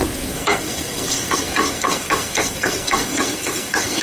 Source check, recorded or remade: remade